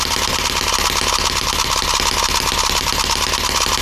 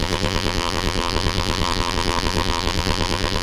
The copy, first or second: second